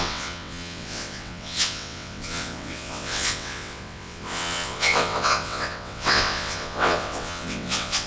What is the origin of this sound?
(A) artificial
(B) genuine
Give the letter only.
A